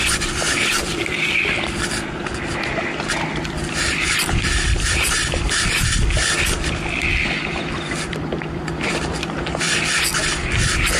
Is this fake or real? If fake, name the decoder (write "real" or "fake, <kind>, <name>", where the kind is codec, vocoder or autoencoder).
fake, vocoder, BigVGAN v2